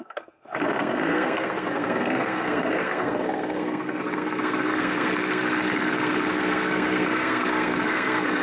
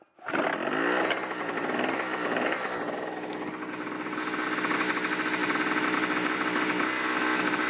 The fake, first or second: first